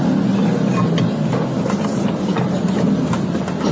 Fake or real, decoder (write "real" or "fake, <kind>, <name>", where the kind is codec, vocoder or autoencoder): real